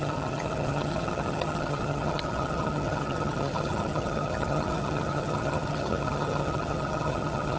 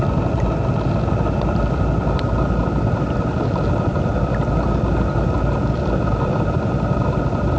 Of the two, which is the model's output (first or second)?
first